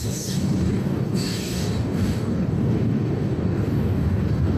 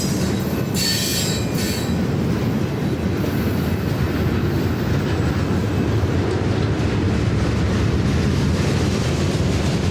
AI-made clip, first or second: first